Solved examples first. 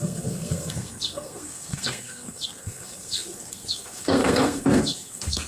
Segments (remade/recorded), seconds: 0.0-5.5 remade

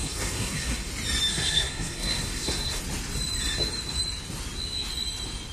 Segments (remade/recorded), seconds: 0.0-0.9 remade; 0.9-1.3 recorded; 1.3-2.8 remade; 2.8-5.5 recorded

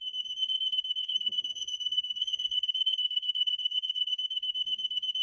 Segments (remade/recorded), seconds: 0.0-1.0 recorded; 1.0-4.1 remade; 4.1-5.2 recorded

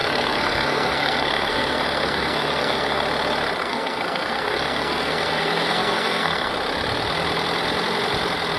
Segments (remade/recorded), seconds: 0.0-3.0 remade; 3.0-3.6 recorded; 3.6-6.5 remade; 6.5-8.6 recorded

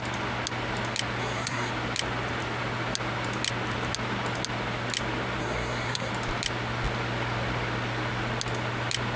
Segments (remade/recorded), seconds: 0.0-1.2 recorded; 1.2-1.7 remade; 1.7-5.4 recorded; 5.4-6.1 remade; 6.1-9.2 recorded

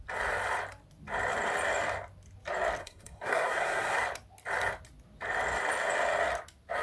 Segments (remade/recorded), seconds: 0.0-2.8 recorded; 2.8-4.0 remade; 4.0-6.8 recorded

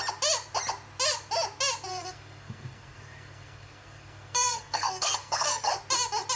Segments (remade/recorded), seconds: 0.0-1.9 recorded; 1.9-5.7 remade; 5.7-6.4 recorded

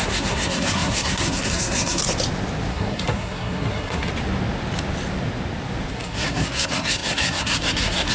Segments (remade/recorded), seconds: 0.0-2.0 remade; 2.0-2.7 recorded; 2.7-4.1 remade; 4.1-5.9 recorded; 5.9-8.1 remade